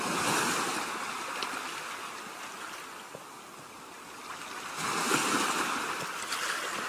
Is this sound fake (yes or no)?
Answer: no